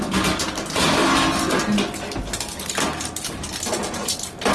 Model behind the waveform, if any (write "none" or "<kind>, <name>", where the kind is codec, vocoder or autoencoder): none